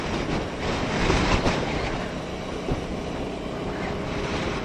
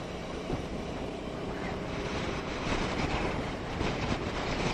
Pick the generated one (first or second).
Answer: second